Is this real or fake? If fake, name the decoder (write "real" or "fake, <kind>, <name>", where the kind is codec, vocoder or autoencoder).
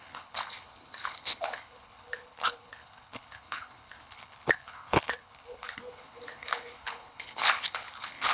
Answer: fake, codec, HILCodec